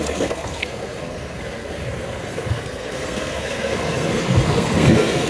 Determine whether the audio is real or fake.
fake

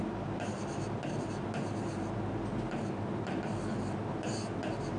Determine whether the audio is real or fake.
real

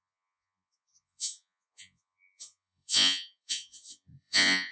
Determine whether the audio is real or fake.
fake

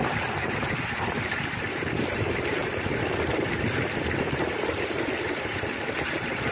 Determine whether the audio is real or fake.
fake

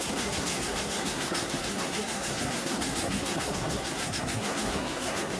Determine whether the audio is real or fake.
fake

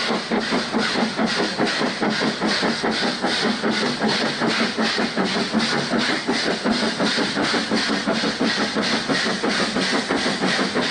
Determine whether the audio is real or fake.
real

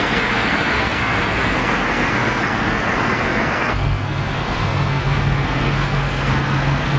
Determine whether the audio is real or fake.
fake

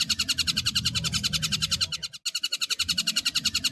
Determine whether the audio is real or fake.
real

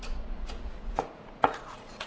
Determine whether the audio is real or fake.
fake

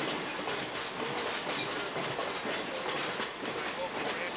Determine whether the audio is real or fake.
real